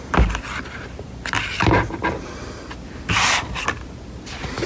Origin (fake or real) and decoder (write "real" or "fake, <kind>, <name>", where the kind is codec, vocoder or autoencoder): real